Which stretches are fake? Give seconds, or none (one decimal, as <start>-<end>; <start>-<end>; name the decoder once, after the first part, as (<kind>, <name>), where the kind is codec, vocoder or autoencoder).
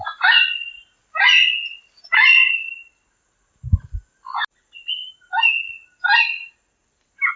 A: none